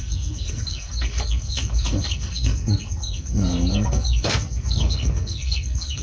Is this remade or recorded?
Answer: remade